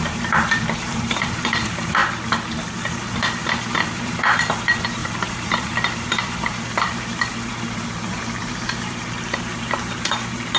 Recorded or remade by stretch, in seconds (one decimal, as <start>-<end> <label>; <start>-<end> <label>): 0.0-2.0 remade; 2.0-2.9 recorded; 2.9-3.4 remade; 3.4-3.9 recorded; 3.9-10.6 remade